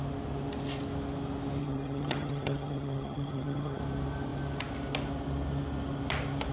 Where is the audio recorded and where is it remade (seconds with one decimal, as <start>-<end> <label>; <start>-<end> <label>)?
0.0-1.6 recorded; 1.6-3.8 remade; 3.8-6.5 recorded